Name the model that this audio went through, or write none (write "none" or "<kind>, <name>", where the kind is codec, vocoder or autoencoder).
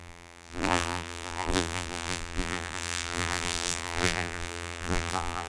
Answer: vocoder, BigVGAN v2